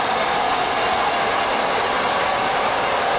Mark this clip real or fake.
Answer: real